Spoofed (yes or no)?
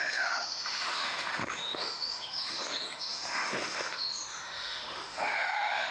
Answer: yes